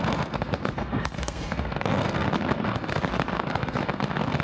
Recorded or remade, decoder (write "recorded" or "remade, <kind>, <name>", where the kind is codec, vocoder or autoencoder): remade, codec, SNAC